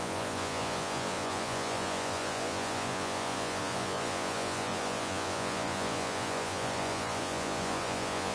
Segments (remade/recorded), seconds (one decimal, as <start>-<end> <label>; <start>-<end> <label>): 0.0-8.3 remade